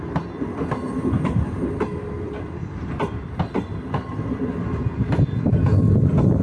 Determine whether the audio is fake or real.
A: real